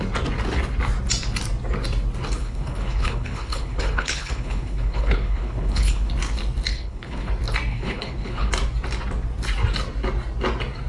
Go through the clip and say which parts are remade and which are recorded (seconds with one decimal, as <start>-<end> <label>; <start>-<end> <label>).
0.0-2.4 recorded; 2.4-6.1 remade; 6.1-6.7 recorded; 6.7-7.3 remade; 7.3-7.7 recorded; 7.7-8.5 remade; 8.5-10.9 recorded